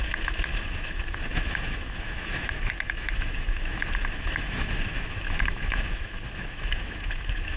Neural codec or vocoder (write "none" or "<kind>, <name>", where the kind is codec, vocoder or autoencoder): autoencoder, DAC-VAE